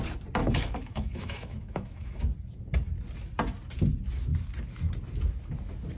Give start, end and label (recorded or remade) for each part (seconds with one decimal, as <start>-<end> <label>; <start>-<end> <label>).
0.0-0.4 recorded; 0.4-2.2 remade; 2.2-6.0 recorded